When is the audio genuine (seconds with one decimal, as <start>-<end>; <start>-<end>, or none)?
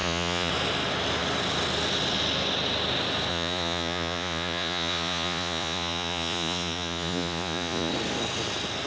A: 0.5-3.3; 7.9-8.9